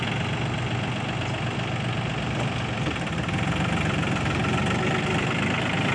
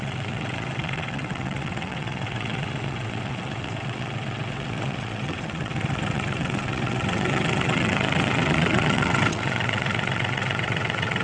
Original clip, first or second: first